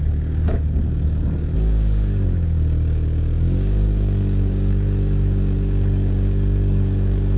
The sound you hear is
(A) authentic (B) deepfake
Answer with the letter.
B